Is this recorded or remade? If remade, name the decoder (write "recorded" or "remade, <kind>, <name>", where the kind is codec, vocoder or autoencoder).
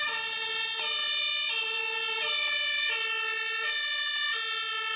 recorded